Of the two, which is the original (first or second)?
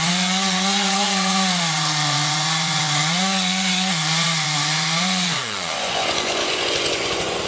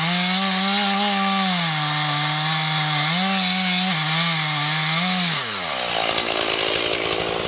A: second